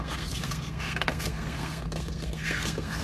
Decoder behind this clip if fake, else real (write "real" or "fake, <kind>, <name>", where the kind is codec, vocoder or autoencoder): fake, codec, SNAC